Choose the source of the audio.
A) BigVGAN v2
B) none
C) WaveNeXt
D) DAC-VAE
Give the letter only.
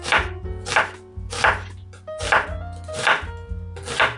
B